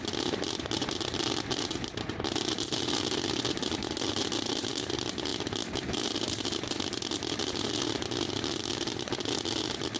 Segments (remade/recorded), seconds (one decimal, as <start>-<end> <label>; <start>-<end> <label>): 0.0-10.0 recorded